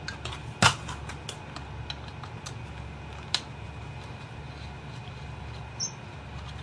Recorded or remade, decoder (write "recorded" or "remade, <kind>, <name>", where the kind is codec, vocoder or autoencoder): recorded